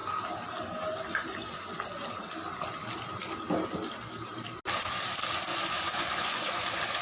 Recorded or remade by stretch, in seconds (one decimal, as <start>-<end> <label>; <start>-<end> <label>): 0.0-5.5 recorded; 5.5-6.6 remade; 6.6-7.0 recorded